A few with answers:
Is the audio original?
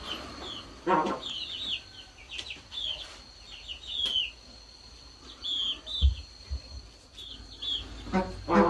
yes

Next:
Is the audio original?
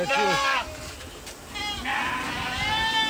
yes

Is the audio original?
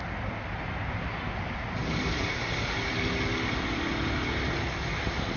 yes